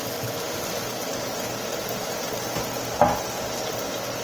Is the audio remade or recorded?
recorded